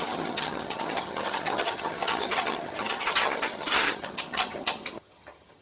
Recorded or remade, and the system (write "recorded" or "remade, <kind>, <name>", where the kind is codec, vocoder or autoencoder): remade, vocoder, HiFi-GAN